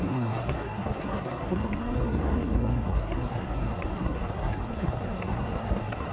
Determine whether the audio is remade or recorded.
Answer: remade